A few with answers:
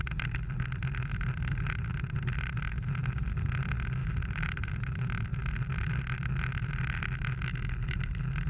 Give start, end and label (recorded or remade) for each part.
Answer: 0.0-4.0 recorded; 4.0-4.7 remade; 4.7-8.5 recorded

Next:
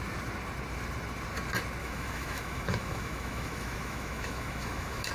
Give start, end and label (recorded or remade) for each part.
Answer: 0.0-1.8 recorded; 1.8-5.1 remade

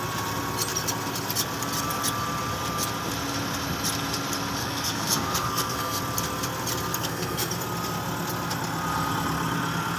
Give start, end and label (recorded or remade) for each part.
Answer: 0.0-4.6 recorded; 4.6-6.0 remade; 6.0-7.0 recorded; 7.0-7.5 remade; 7.5-10.0 recorded

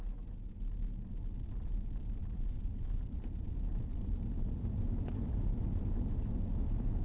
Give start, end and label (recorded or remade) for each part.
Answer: 0.0-3.9 recorded; 3.9-4.5 remade; 4.5-7.0 recorded